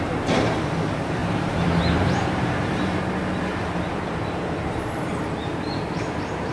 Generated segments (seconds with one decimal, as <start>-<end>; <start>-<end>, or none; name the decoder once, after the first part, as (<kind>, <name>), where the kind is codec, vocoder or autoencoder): 0.0-2.7 (vocoder, BigVGAN v2); 3.9-6.5